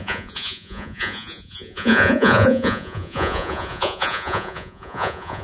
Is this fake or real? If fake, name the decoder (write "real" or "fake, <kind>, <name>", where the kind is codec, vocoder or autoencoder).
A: fake, vocoder, Vocos